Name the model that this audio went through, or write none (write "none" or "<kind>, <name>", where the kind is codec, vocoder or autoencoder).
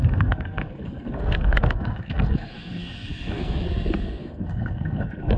codec, SNAC